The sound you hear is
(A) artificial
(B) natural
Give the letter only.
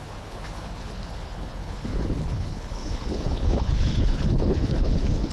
A